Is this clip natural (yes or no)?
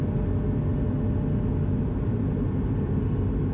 yes